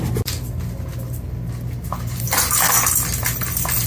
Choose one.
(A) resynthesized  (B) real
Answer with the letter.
B